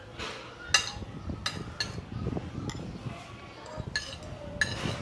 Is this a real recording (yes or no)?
yes